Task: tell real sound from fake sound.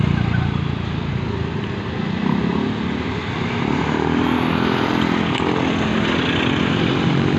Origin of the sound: real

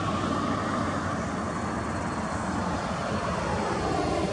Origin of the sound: real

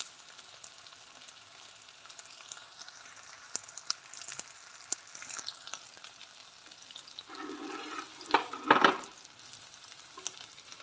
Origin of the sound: real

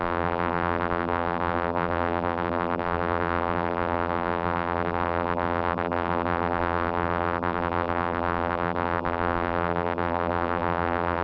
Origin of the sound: fake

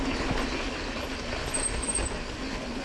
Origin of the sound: real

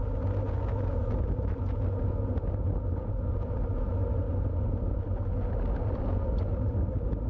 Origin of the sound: real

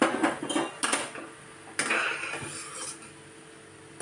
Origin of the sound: real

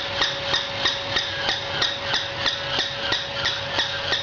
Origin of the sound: real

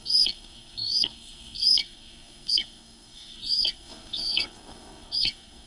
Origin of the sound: fake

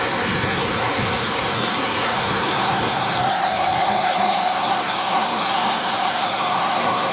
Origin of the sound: fake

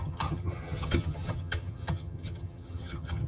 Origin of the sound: fake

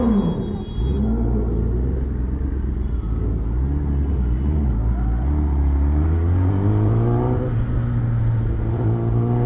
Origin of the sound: real